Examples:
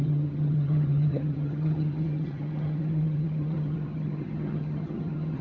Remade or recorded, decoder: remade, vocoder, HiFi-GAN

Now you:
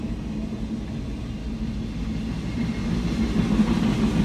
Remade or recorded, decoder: recorded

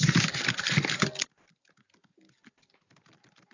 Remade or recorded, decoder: recorded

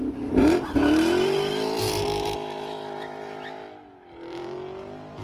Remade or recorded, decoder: remade, vocoder, BigVGAN v2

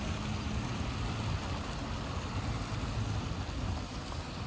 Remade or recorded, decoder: recorded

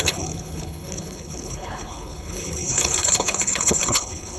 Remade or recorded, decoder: remade, codec, HILCodec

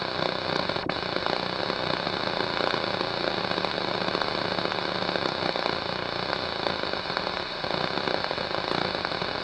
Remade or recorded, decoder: recorded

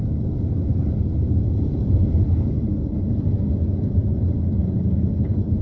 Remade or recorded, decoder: recorded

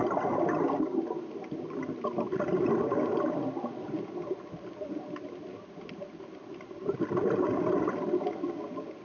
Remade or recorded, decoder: recorded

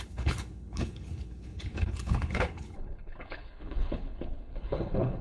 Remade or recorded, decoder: remade, codec, HILCodec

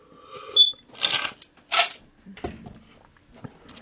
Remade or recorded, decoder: recorded